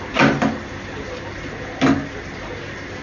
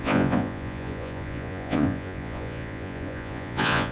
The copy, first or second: second